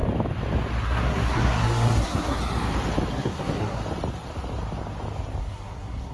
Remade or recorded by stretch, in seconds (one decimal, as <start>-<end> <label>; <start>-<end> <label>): 0.0-0.8 recorded; 0.8-2.4 remade; 2.4-3.1 recorded; 3.1-3.8 remade; 3.8-5.4 recorded; 5.4-6.1 remade